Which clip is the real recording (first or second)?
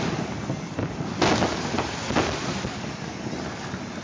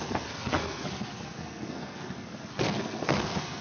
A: first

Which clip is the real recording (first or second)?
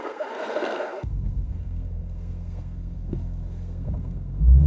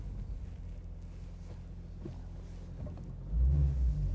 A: second